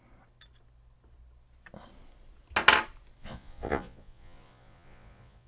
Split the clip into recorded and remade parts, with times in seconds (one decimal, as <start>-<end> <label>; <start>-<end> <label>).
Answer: 0.0-3.2 recorded; 3.2-5.5 remade